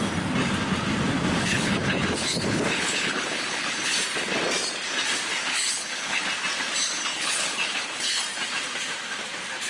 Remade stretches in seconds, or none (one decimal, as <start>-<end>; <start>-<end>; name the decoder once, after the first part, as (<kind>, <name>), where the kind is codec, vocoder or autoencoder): 1.4-3.9 (codec, HILCodec); 5.3-6.3; 6.8-8.2